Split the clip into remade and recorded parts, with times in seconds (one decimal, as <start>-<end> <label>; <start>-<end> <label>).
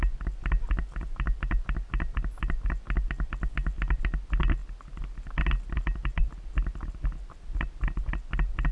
0.0-8.7 recorded